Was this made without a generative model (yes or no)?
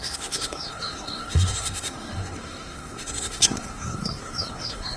no